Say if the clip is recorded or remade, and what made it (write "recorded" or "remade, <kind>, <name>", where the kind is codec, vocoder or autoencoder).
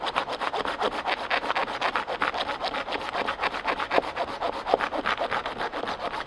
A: recorded